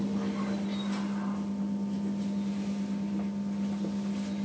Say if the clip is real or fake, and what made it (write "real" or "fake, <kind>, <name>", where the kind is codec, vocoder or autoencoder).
real